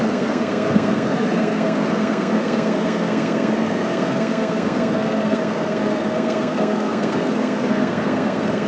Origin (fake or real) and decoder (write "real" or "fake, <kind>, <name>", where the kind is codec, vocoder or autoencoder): fake, codec, SNAC